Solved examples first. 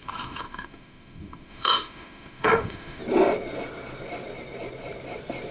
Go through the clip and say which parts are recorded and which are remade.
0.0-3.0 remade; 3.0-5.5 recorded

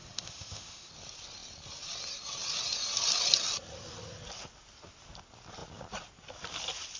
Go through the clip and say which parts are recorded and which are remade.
0.0-0.9 remade; 0.9-7.0 recorded

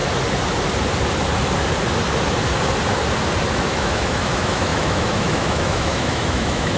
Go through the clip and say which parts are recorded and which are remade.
0.0-3.5 recorded; 3.5-6.8 remade

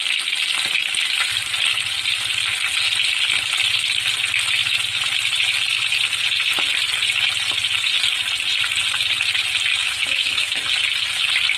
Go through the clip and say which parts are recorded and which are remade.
0.0-9.7 recorded; 9.7-10.6 remade; 10.6-11.6 recorded